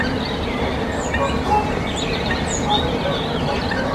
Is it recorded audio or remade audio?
recorded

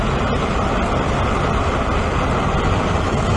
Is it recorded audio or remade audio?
recorded